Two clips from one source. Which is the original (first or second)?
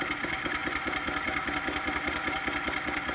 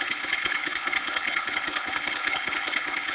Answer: first